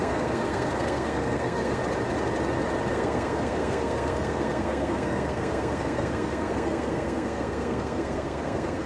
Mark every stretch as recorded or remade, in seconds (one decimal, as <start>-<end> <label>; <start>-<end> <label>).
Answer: 0.0-1.8 remade; 1.8-2.9 recorded; 2.9-8.9 remade